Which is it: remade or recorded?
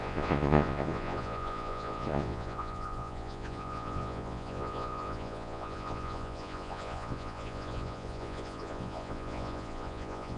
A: remade